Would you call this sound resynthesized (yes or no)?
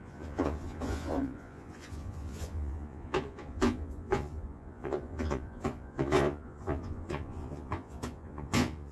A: yes